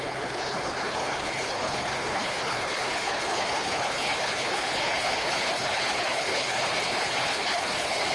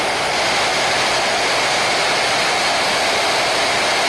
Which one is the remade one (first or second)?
first